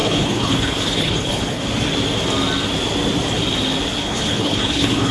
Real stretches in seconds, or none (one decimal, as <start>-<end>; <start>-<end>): 1.6-4.0